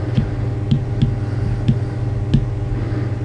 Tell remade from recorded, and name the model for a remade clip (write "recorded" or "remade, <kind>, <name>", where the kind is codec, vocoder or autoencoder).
recorded